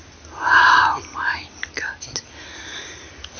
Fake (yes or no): no